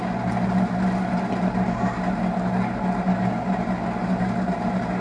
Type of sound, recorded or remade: recorded